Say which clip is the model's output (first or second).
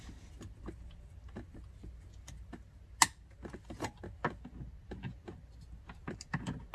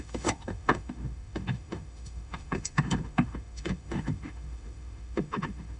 second